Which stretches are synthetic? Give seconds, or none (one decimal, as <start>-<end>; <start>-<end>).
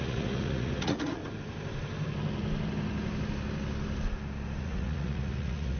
0.0-1.2; 4.6-5.8